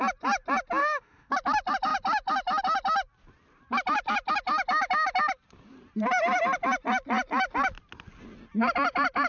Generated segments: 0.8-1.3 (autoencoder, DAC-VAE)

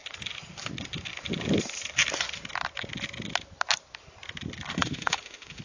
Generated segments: 4.7-5.6 (autoencoder, DAC-VAE)

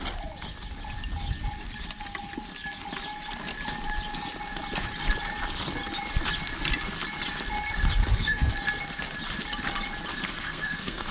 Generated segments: 8.0-8.5 (codec, SNAC); 10.1-11.1

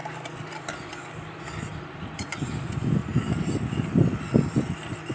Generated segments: 1.7-2.5 (vocoder, BigVGAN v2)